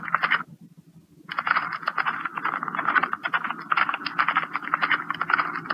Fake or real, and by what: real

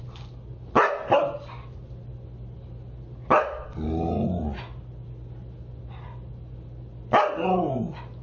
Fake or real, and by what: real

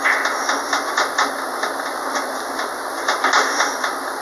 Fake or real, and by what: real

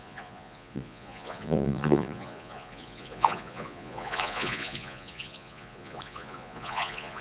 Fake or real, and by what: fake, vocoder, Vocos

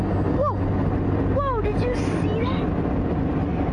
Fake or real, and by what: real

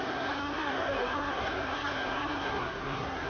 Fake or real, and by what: fake, codec, SNAC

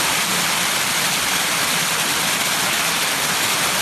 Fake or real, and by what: real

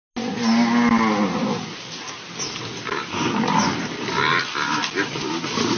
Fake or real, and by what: real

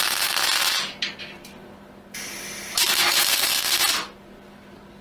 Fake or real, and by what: real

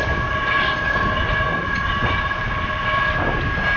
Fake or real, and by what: real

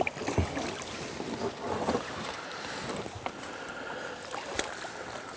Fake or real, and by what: real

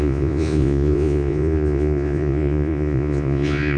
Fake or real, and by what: fake, vocoder, Vocos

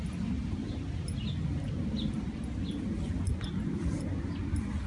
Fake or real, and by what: real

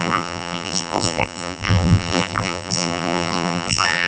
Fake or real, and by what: fake, vocoder, BigVGAN v2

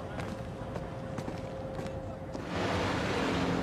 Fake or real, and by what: real